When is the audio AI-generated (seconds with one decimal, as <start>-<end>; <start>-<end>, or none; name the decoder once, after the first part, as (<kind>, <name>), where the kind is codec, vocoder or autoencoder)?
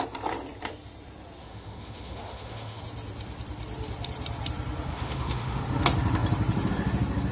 1.4-2.8 (autoencoder, DAC-VAE); 4.9-5.6